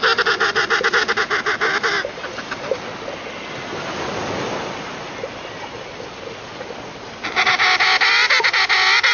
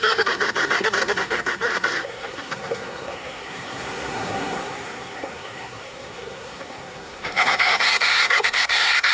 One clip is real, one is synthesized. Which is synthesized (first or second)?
second